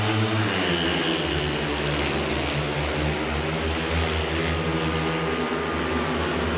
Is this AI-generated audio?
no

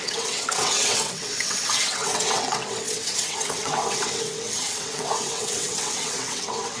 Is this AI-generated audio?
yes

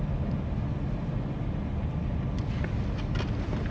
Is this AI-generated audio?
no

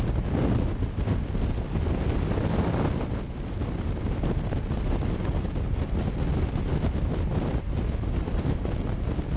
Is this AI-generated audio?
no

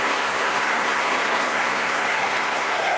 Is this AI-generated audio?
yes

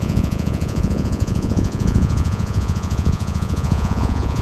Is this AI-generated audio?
yes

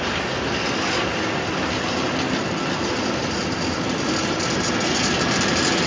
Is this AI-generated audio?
no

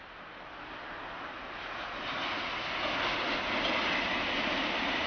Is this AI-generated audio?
no